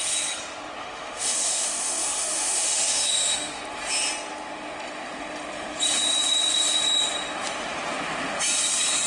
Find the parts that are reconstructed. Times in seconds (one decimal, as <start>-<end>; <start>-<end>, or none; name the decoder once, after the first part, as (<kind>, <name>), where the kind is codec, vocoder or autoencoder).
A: 0.8-3.6 (autoencoder, DAC-VAE)